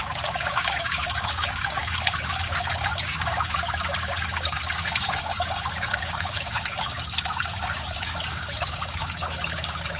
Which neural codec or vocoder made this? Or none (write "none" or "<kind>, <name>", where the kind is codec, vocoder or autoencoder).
codec, DAC